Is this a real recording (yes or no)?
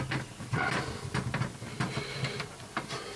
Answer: yes